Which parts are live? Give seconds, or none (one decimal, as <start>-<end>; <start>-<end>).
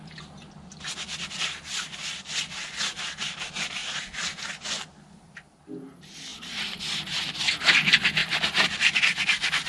0.0-6.3; 6.8-9.7